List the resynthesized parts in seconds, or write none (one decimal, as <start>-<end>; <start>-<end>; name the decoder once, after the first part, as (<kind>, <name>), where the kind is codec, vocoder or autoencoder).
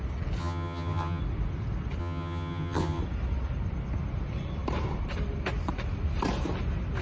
0.4-1.2 (vocoder, HiFi-GAN); 2.0-3.0